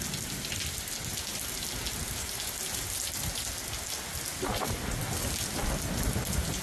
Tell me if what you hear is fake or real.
real